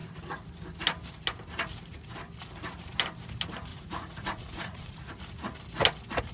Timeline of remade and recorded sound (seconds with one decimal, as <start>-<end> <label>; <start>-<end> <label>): 0.0-3.7 recorded; 3.7-5.1 remade; 5.1-6.3 recorded

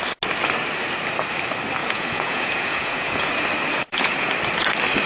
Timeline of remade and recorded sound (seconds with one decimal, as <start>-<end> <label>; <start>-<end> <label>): 0.0-1.8 recorded; 1.8-3.3 remade; 3.3-3.7 recorded; 3.7-4.3 remade; 4.3-5.1 recorded

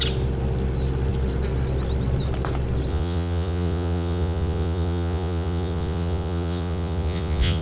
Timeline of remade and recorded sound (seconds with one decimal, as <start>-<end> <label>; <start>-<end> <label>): 0.0-2.9 recorded; 2.9-7.6 remade

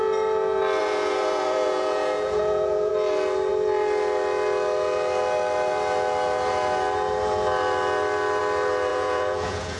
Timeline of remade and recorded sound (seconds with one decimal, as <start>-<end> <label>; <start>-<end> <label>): 0.0-0.8 recorded; 0.8-2.9 remade; 2.9-8.9 recorded; 8.9-9.8 remade